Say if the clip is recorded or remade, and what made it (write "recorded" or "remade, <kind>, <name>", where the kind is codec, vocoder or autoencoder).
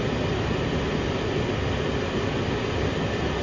recorded